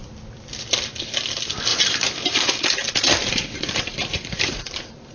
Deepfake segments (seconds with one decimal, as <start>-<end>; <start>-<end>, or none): 1.7-5.1